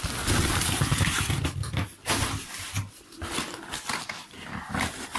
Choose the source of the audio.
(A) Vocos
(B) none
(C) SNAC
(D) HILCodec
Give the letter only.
B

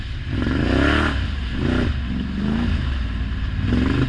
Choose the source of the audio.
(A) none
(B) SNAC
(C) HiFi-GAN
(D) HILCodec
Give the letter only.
A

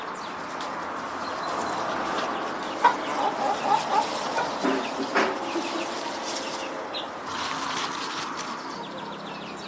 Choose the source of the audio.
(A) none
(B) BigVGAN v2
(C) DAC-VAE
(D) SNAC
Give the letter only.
A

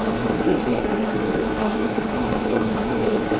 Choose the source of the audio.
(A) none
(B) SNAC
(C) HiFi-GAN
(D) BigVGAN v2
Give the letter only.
B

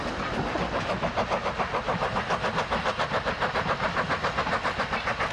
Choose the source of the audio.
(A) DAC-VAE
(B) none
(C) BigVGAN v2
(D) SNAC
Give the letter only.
B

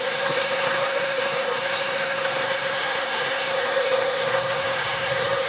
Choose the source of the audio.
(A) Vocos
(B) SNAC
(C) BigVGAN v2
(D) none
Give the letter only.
B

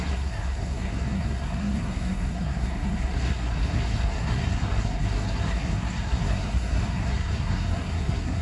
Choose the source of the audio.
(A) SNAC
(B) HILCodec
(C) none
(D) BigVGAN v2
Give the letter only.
A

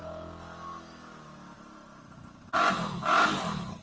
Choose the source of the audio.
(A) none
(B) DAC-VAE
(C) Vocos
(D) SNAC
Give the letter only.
A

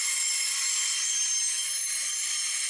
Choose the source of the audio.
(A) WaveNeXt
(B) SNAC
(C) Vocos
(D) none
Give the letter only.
D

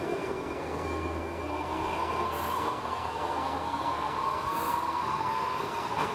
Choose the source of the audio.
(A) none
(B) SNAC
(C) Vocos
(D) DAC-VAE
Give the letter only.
B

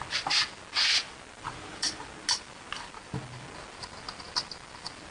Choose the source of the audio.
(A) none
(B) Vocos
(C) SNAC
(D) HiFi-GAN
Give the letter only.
A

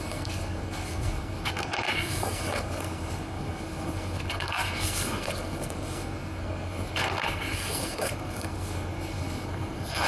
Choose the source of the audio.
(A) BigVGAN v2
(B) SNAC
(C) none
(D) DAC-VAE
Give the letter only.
B